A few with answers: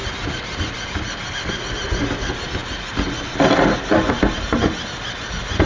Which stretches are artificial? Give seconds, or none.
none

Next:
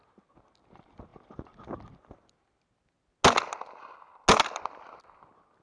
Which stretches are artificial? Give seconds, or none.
none

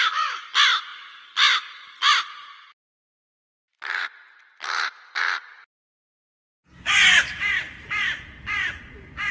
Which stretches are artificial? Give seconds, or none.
0.0-9.3 (vocoder, BigVGAN v2)

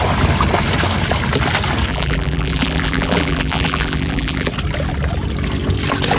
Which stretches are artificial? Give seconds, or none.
1.9-4.5 (vocoder, BigVGAN v2)

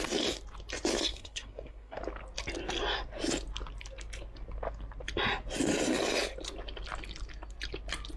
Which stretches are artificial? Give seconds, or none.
1.1-2.0 (codec, SNAC)